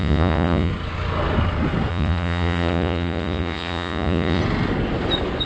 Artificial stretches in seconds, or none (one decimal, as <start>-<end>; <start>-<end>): 0.0-0.7; 1.9-4.4